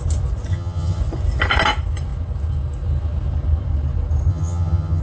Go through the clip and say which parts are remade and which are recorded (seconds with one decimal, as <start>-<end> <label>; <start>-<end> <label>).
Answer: 0.0-0.5 recorded; 0.5-1.0 remade; 1.0-4.3 recorded; 4.3-5.0 remade